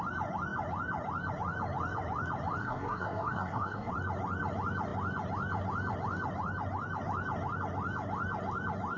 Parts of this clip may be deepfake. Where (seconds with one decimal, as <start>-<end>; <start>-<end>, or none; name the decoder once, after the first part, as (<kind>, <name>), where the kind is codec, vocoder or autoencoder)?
2.6-3.9 (codec, SNAC)